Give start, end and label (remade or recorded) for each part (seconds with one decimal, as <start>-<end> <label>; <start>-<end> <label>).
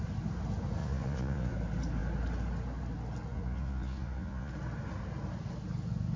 0.0-0.8 recorded; 0.8-1.5 remade; 1.5-3.3 recorded; 3.3-4.5 remade; 4.5-6.2 recorded